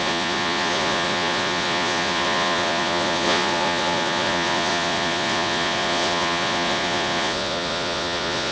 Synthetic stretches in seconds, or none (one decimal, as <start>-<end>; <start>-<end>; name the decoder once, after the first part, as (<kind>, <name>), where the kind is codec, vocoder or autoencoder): 0.0-8.5 (vocoder, Vocos)